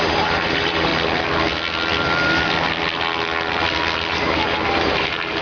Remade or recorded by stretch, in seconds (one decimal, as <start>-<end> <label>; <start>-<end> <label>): 0.0-0.9 remade; 0.9-4.1 recorded; 4.1-5.4 remade